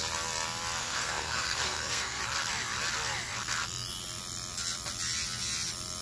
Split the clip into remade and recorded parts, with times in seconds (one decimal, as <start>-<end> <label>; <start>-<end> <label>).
0.0-0.8 recorded; 0.8-2.2 remade; 2.2-6.0 recorded